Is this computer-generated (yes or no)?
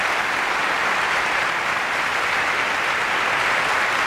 yes